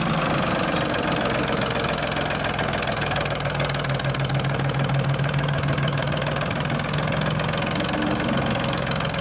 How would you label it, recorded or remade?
recorded